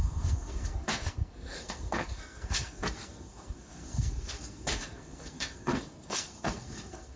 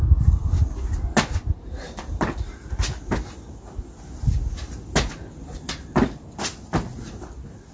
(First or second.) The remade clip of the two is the first